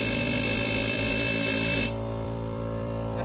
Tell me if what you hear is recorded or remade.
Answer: remade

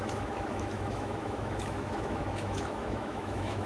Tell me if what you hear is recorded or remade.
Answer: remade